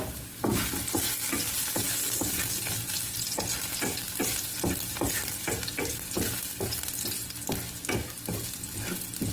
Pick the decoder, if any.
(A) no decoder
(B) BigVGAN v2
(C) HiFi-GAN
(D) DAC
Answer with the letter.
A